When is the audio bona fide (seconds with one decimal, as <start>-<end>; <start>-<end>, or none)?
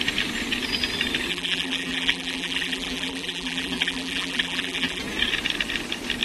0.0-1.3; 5.0-6.2